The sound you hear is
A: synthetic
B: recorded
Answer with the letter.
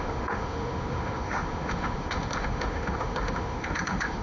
A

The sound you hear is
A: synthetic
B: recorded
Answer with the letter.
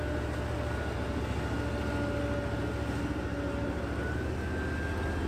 B